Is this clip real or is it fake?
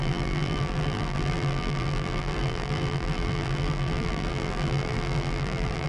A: fake